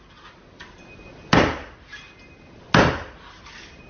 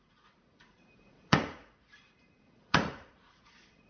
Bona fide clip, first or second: first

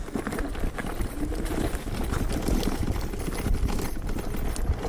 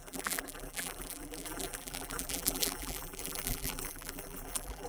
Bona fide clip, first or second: first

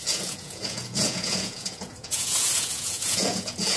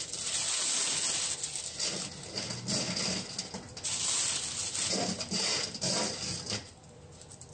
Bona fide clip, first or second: second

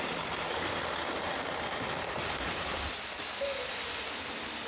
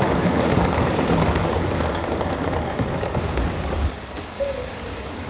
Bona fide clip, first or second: first